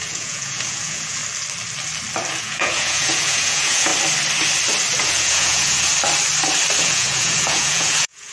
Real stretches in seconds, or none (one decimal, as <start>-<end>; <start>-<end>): 1.2-2.3; 3.9-5.0; 5.9-6.8